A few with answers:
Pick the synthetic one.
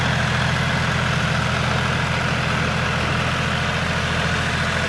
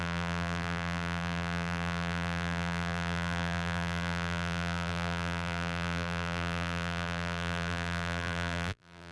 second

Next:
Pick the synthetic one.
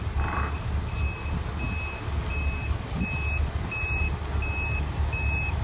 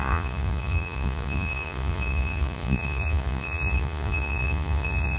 second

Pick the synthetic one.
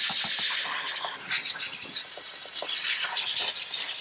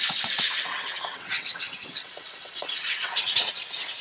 second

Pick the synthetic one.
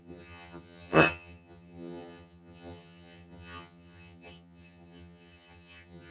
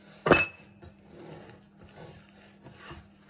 first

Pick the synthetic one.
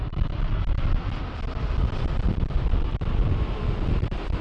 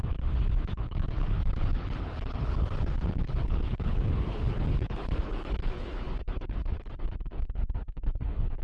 second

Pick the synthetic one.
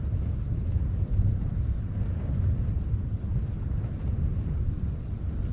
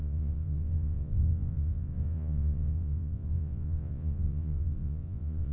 second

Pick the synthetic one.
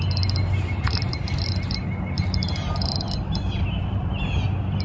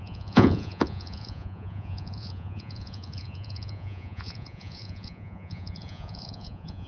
second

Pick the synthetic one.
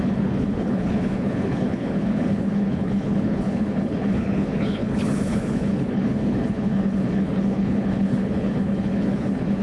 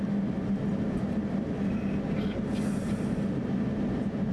first